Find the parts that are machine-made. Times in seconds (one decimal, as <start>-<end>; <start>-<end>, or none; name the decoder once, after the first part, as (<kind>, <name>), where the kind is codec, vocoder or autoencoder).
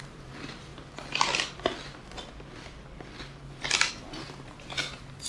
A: 0.0-0.7 (vocoder, BigVGAN v2); 3.9-5.3